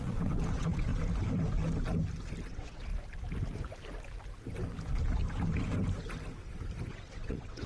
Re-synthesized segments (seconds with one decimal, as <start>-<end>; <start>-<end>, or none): 0.0-0.9; 2.5-2.9; 6.9-7.7